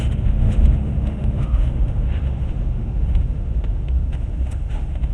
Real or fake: fake